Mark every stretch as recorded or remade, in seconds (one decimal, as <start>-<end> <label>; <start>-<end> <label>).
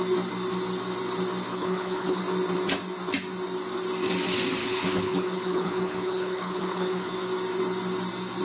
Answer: 0.0-1.5 recorded; 1.5-2.2 remade; 2.2-4.6 recorded; 4.6-7.1 remade; 7.1-8.4 recorded